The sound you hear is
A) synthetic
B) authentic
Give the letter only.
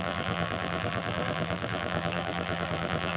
A